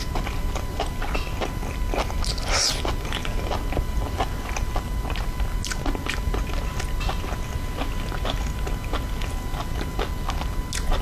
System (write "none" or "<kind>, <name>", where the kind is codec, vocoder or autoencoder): none